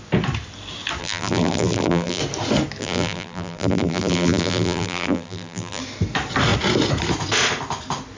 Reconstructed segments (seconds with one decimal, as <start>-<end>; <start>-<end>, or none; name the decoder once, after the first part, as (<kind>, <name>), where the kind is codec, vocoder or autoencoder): 1.0-2.2 (vocoder, BigVGAN v2); 2.8-5.8